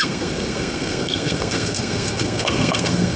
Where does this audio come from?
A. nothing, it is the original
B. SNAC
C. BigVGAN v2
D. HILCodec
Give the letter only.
B